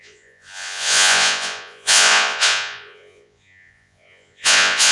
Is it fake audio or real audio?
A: fake